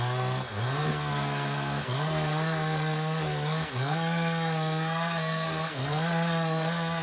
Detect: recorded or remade remade